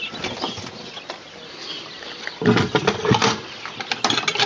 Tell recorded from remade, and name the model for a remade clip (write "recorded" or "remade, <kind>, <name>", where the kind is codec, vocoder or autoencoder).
recorded